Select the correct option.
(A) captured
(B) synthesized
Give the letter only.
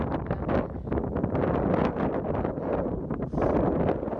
A